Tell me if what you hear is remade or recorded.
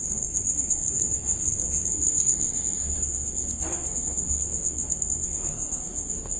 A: remade